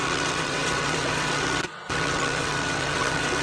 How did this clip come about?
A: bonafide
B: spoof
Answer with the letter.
B